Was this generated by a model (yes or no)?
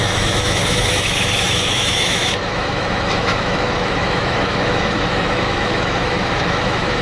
yes